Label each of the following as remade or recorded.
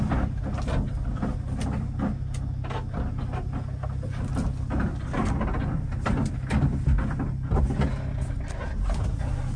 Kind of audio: recorded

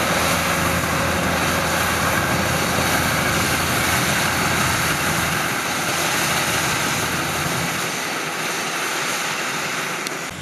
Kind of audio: recorded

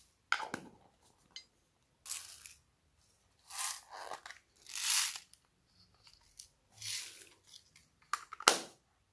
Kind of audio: recorded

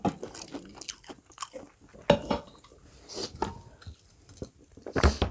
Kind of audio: recorded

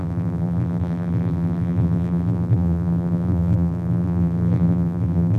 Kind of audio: remade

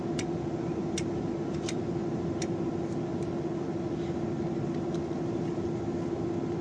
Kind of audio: recorded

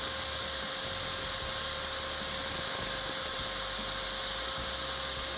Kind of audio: recorded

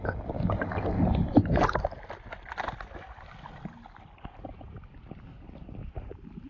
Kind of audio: recorded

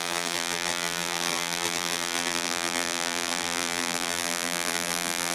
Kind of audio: remade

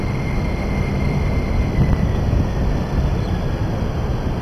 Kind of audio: recorded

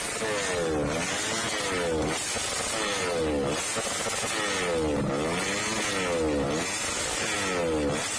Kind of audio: recorded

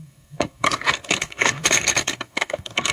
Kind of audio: remade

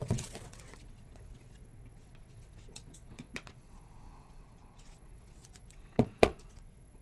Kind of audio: remade